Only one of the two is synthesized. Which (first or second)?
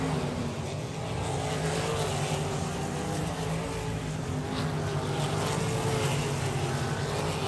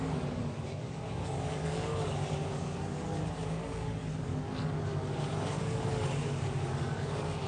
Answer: second